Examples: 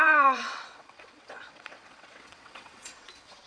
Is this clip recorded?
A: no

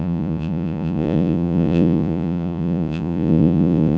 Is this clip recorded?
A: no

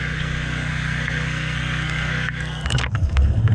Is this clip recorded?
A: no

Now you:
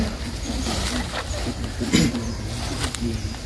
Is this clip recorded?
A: yes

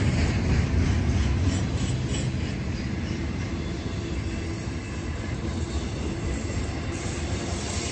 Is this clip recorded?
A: yes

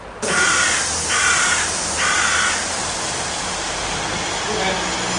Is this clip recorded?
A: yes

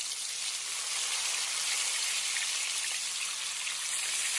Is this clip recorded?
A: yes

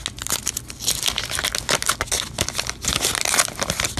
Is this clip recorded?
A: yes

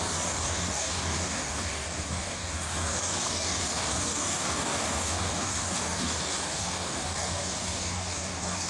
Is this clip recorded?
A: no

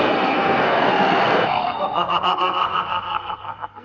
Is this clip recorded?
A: no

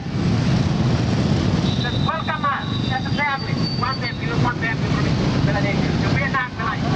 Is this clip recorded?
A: yes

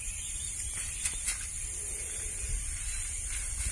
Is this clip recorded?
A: yes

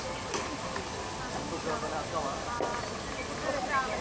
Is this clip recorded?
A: yes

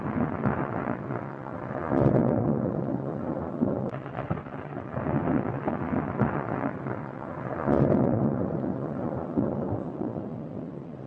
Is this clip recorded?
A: no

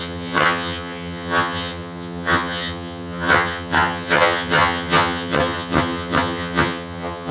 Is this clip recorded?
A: no